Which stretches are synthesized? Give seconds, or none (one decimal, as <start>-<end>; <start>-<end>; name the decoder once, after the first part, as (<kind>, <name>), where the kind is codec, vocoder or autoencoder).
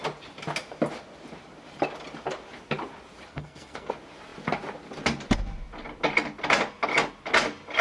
3.3-3.9 (codec, SNAC)